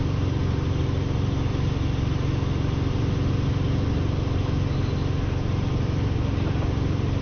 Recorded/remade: recorded